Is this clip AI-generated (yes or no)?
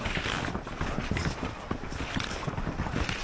no